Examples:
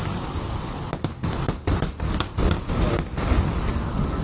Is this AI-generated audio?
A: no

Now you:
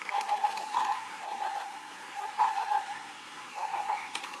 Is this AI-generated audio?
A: yes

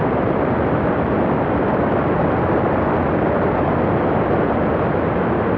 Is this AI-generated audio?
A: no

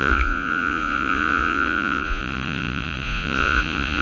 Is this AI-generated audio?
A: yes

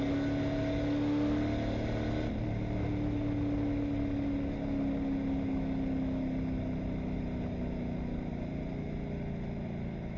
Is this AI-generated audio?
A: no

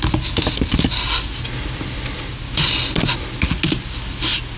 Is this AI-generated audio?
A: no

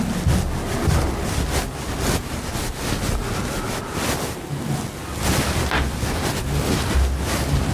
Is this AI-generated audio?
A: no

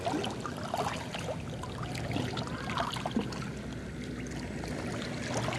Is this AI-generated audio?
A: no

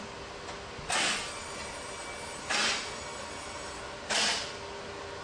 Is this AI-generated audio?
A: no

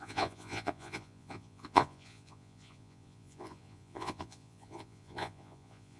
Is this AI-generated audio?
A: yes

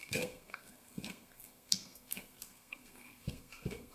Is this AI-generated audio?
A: yes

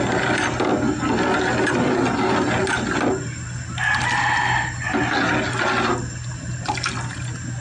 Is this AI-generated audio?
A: no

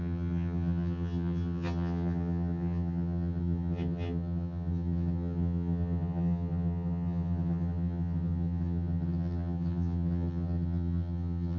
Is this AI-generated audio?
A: yes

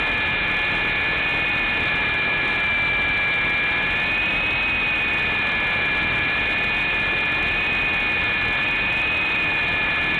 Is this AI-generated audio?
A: no